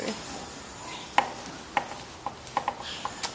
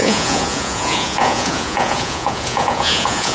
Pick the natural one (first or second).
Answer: first